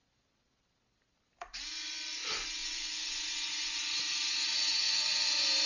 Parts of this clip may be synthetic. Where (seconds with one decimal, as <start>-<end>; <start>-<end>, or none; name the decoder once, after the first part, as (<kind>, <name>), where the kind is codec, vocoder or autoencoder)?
2.6-3.8 (vocoder, Vocos); 4.7-5.3